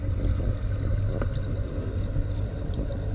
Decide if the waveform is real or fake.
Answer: real